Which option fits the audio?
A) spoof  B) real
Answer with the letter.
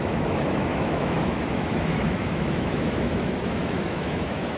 A